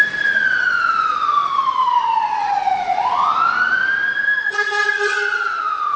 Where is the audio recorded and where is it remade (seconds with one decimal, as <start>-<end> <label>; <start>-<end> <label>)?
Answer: 0.0-3.3 remade; 3.3-4.4 recorded; 4.4-6.0 remade